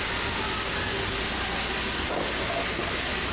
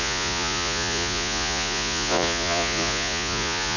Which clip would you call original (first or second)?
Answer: first